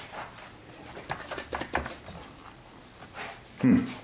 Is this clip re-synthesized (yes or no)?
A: yes